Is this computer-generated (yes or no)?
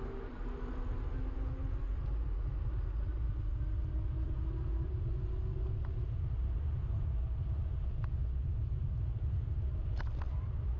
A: no